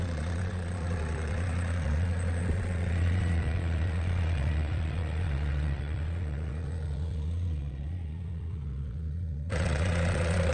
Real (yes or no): no